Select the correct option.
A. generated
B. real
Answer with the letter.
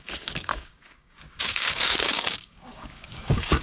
A